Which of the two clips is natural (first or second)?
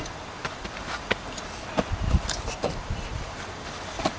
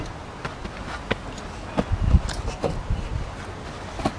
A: second